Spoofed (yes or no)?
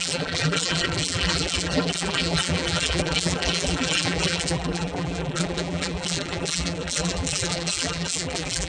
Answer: yes